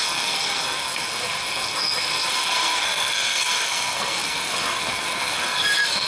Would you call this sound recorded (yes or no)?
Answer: no